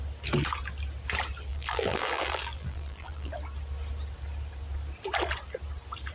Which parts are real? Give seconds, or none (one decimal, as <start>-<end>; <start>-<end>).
0.0-1.5; 3.3-6.1